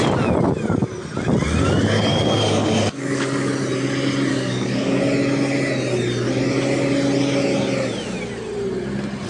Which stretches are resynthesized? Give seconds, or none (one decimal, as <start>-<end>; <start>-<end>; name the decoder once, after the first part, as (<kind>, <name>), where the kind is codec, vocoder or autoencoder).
2.1-3.5 (codec, DAC); 4.3-5.0